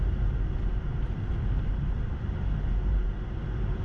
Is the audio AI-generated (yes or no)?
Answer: no